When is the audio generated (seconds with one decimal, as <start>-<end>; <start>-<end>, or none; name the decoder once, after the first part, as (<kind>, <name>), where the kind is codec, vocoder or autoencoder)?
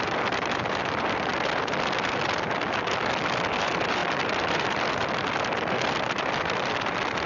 0.0-1.3 (vocoder, BigVGAN v2); 2.1-7.3